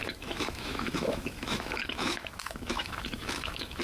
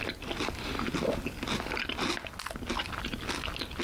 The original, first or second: second